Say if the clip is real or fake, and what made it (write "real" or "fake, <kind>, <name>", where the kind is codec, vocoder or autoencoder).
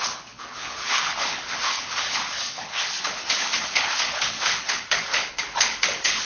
fake, codec, HILCodec